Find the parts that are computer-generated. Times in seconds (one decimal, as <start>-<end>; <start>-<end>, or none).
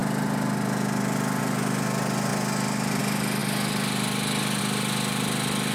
none